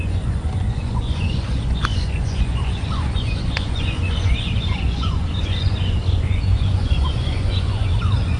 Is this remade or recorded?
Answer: remade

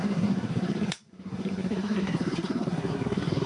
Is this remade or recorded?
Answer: remade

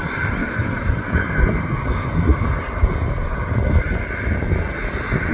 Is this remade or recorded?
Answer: recorded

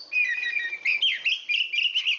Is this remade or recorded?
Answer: recorded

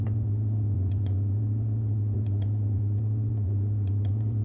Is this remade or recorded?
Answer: remade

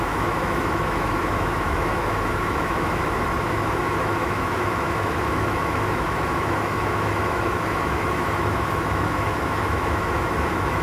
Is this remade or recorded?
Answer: remade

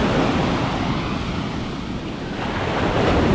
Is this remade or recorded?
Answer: recorded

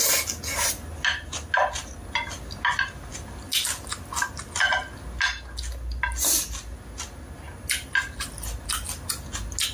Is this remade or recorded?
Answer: recorded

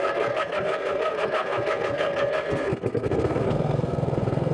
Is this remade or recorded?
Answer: remade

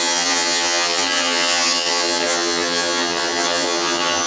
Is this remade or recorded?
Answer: remade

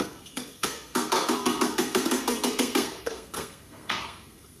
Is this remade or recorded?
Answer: remade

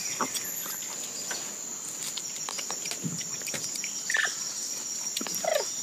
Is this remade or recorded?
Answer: recorded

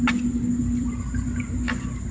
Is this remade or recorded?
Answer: recorded